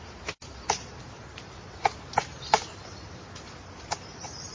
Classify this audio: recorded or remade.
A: recorded